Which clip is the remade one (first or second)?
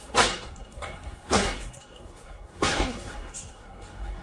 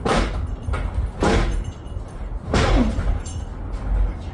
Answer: first